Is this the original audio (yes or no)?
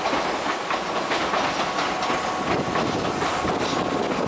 yes